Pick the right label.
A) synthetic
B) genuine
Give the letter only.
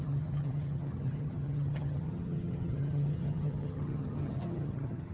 A